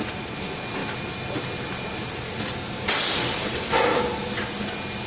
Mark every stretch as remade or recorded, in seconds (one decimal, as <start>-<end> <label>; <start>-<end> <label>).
0.0-5.1 recorded